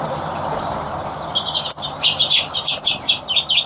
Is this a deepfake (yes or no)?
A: yes